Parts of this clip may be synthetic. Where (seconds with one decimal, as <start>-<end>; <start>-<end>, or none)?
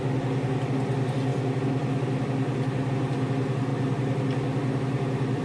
none